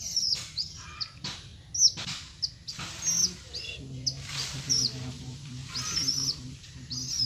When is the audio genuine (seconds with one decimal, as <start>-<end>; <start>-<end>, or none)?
1.5-4.4; 5.6-6.1